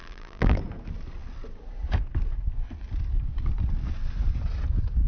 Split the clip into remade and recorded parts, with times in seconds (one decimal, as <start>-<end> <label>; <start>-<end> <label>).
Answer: 0.0-0.6 remade; 0.6-5.1 recorded